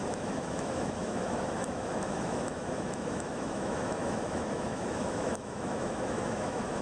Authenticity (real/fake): fake